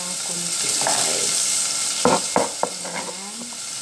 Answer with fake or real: real